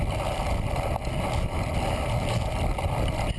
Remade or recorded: recorded